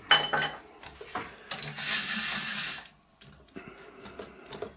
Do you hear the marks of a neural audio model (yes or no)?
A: no